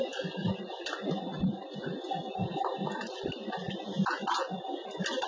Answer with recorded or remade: recorded